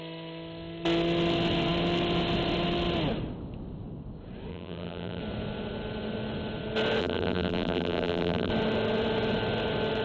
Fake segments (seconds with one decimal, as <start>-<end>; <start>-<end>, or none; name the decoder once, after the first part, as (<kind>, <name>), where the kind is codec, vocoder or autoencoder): 4.5-5.2 (vocoder, BigVGAN v2); 7.0-8.5